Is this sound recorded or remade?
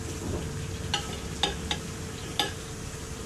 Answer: recorded